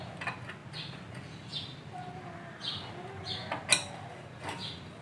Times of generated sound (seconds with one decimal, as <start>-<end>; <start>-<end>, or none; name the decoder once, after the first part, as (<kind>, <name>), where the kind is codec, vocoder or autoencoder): none